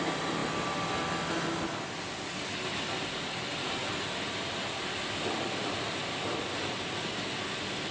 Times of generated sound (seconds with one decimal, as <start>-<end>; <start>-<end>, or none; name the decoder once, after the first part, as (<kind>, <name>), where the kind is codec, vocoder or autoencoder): none